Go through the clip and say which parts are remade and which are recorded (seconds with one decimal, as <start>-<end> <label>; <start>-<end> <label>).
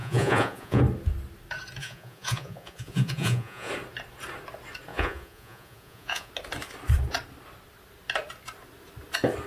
0.0-0.8 remade; 0.8-1.8 recorded; 1.8-3.7 remade; 3.7-4.9 recorded; 4.9-6.3 remade; 6.3-9.5 recorded